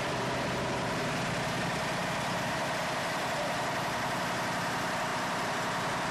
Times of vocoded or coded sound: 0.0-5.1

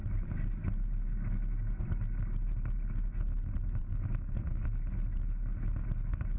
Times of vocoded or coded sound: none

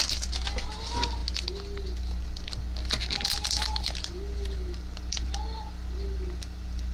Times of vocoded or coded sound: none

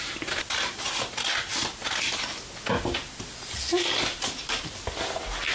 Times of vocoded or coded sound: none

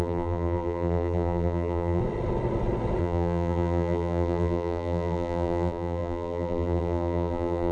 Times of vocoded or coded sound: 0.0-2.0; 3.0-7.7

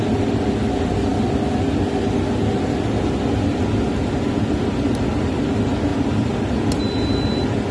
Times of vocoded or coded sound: 0.0-1.1; 4.7-7.7

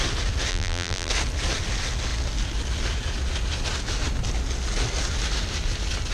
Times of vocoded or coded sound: 0.5-1.1